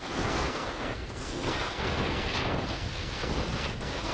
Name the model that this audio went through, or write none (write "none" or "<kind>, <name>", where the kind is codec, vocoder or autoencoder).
codec, SNAC